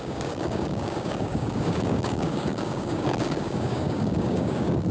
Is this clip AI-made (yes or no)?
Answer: yes